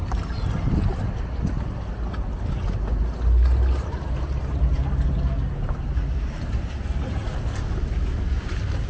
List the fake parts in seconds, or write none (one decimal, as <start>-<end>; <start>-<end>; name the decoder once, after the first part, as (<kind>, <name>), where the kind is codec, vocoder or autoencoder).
none